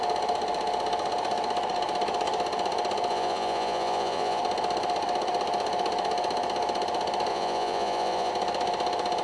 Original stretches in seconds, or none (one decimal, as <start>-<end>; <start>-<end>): 0.0-3.1; 4.4-7.3; 8.3-9.2